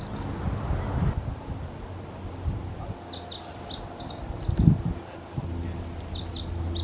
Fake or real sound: real